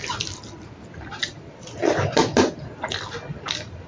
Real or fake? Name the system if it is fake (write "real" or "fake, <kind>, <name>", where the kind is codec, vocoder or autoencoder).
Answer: real